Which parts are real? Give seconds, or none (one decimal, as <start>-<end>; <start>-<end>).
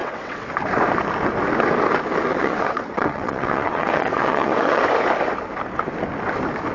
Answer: 0.5-2.3; 4.9-6.7